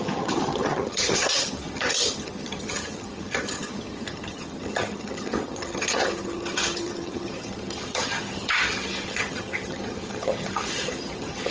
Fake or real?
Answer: fake